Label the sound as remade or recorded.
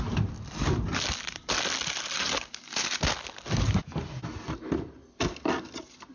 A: recorded